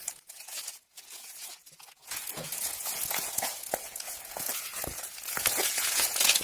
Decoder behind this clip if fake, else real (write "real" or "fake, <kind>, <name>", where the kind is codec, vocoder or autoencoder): fake, vocoder, Vocos